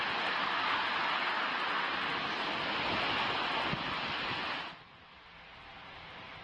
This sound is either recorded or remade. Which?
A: recorded